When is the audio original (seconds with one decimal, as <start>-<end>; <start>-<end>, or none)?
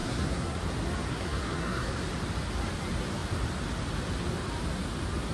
0.6-1.1; 1.9-5.3